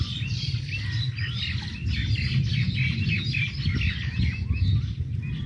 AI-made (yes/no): no